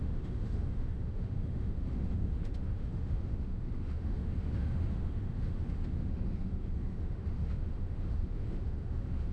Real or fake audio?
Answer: fake